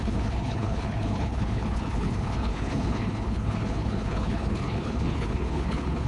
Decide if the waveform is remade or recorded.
remade